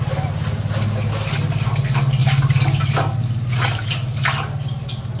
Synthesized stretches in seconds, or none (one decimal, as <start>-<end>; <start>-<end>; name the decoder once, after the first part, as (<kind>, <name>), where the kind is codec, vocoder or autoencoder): none